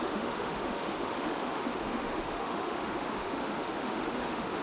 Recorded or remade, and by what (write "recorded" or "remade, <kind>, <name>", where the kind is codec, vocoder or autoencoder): remade, autoencoder, DAC-VAE